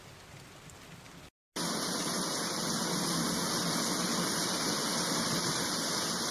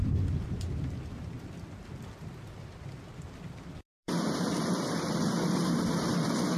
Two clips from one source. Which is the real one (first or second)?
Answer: first